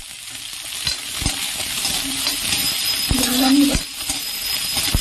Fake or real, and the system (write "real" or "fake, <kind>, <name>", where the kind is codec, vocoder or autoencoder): real